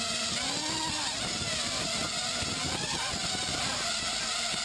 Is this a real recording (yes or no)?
yes